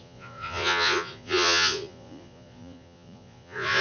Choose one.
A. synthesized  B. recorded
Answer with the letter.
A